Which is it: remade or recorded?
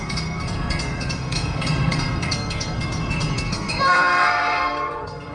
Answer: remade